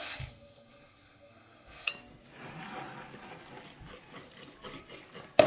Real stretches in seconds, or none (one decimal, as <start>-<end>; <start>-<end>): 1.9-5.5